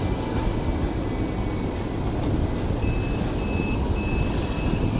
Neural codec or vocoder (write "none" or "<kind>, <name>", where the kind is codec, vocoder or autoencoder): none